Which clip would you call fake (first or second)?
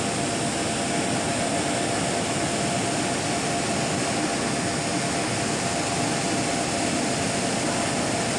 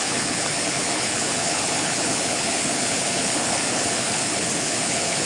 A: second